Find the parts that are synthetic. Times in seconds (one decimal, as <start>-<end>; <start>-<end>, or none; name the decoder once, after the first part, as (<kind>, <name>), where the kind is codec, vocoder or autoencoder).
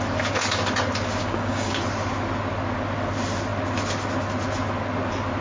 1.2-1.7 (codec, DAC)